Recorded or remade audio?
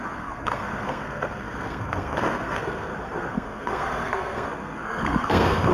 remade